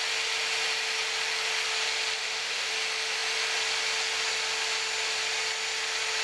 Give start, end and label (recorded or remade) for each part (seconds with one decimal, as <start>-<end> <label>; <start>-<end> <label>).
0.0-2.2 recorded; 2.2-2.7 remade; 2.7-6.2 recorded